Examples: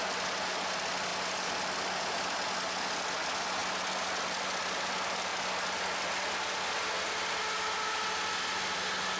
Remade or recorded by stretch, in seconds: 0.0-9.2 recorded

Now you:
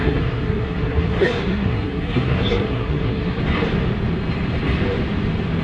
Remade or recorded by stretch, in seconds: 0.0-3.4 remade; 3.4-5.6 recorded

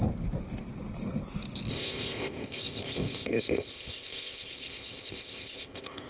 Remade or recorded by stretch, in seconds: 0.0-1.7 recorded; 1.7-6.1 remade

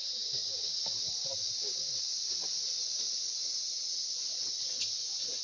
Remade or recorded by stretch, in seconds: 0.0-5.4 recorded

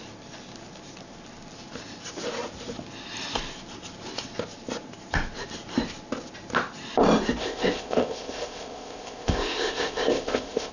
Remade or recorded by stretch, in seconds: 0.0-7.4 recorded; 7.4-10.7 remade